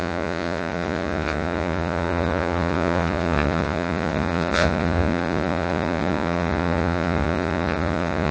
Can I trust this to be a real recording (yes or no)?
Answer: no